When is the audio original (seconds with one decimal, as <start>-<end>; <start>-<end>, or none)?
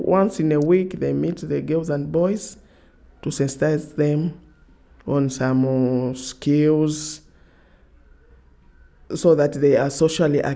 0.0-10.6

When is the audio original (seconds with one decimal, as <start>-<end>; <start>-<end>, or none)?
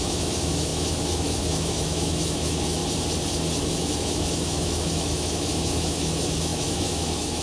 2.8-3.7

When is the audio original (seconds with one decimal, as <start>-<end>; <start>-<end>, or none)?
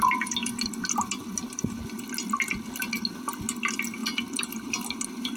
0.0-5.4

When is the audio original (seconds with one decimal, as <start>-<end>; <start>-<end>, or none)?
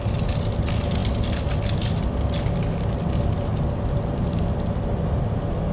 0.0-5.7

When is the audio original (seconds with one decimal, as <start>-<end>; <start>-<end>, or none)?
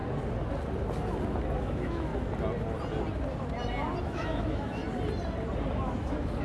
0.0-1.6; 2.1-4.0; 4.8-5.7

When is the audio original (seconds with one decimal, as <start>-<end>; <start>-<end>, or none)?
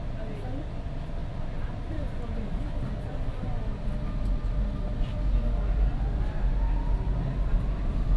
0.0-8.2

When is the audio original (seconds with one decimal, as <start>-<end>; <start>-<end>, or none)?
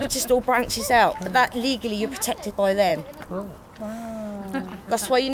2.9-4.8